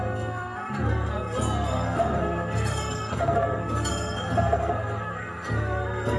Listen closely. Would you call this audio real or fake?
fake